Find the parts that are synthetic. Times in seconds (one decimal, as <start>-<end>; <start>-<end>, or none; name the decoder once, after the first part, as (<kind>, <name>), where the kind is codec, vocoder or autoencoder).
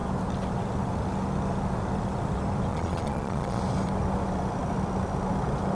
2.7-3.6 (vocoder, Vocos)